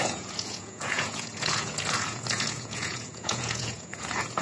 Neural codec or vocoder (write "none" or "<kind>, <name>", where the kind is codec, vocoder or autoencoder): vocoder, Vocos